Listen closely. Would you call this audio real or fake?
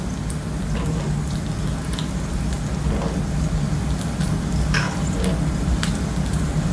real